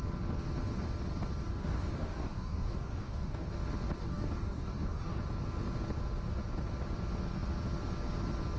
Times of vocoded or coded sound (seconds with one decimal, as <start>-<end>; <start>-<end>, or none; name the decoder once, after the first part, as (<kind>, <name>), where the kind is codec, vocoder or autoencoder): 1.5-3.5 (codec, DAC); 4.0-5.2